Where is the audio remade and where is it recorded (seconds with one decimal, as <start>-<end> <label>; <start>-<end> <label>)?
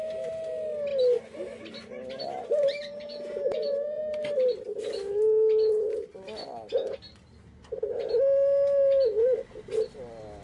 0.0-2.8 recorded; 2.8-4.0 remade; 4.0-10.4 recorded